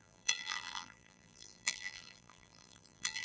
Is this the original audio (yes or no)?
no